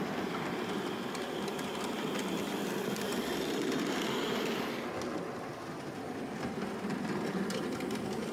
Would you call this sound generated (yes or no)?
no